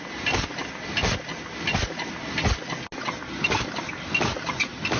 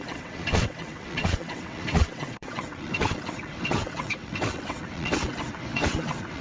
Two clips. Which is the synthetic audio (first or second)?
second